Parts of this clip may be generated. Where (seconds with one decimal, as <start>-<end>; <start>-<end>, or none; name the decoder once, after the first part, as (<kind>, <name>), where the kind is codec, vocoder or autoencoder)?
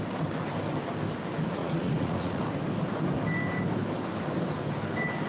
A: 1.6-2.4 (vocoder, Vocos)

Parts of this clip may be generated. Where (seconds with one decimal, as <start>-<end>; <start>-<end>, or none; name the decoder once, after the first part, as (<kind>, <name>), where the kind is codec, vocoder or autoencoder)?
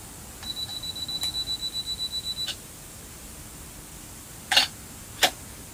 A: none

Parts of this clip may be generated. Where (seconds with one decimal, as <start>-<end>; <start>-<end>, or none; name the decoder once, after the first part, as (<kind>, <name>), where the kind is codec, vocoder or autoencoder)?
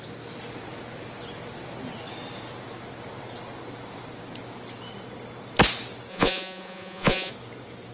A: 6.1-7.3 (vocoder, Vocos)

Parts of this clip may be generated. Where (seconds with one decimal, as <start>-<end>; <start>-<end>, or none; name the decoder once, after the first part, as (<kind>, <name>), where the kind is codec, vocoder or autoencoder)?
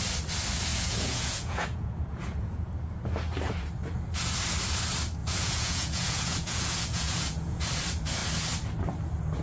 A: 0.7-2.7 (vocoder, Vocos); 5.2-7.6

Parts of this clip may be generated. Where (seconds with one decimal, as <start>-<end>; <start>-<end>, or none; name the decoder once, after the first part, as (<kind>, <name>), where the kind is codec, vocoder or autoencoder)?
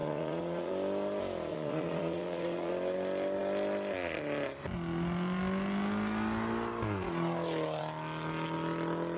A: 0.0-0.7 (vocoder, Vocos); 1.5-2.7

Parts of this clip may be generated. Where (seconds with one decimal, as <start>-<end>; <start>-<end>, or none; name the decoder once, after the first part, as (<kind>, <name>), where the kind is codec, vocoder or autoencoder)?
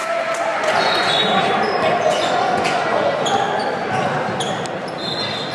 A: 0.0-1.2 (vocoder, Vocos); 2.1-3.1